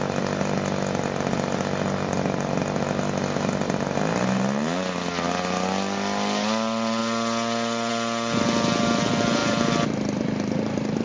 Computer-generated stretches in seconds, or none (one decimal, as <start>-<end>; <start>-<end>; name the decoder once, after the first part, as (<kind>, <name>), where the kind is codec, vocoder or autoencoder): none